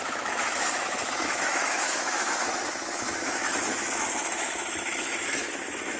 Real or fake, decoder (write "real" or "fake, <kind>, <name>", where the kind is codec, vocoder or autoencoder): fake, autoencoder, DAC-VAE